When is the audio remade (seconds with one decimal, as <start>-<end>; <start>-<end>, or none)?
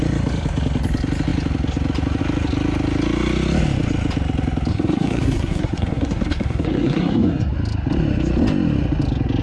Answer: 4.7-7.5